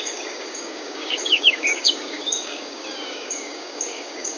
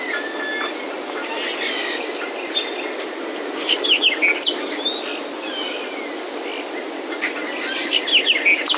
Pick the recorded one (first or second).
second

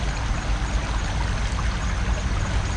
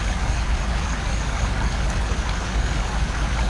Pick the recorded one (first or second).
first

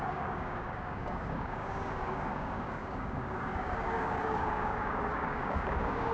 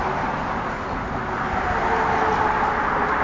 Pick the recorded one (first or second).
second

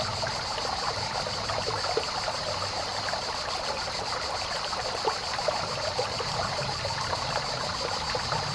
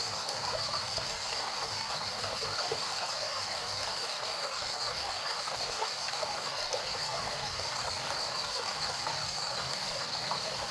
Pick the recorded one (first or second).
first